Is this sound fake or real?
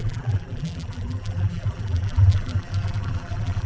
fake